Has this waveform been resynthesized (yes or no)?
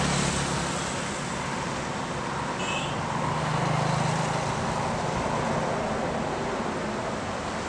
no